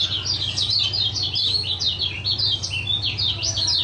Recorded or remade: recorded